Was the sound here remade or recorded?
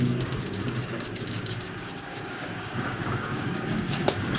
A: remade